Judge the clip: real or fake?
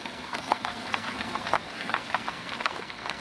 fake